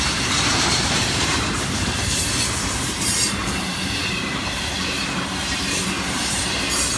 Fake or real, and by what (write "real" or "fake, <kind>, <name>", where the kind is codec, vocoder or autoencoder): fake, vocoder, BigVGAN v2